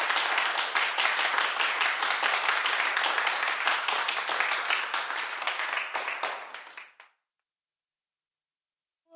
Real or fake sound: real